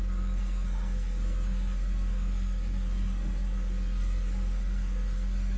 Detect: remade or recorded remade